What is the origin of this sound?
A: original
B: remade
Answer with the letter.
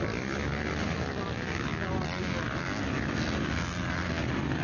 A